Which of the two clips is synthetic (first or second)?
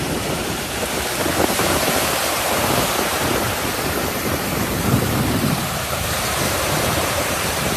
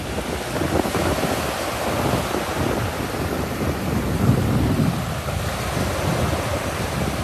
first